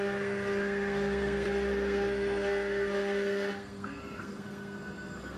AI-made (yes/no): yes